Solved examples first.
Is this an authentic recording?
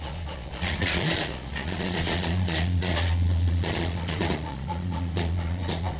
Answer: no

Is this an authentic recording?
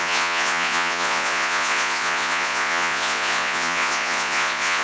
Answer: no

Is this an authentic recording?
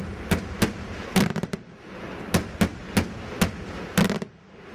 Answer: yes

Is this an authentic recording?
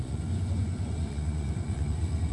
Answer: no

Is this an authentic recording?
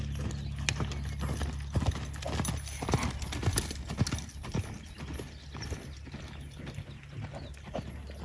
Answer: yes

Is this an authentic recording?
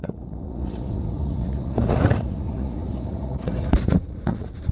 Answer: no